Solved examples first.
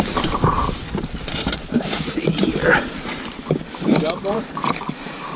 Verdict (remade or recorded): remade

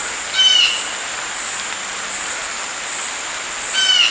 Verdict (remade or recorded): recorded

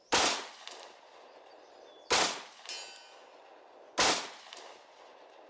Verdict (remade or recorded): recorded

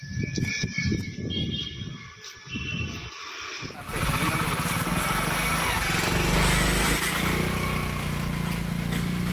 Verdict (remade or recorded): recorded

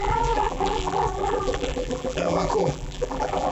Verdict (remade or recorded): remade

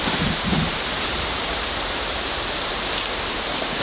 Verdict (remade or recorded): remade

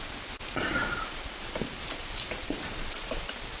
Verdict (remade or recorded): recorded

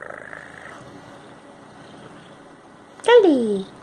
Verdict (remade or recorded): recorded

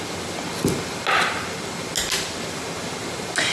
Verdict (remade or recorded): recorded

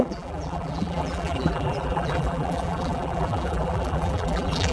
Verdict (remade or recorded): remade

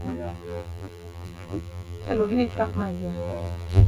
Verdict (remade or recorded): remade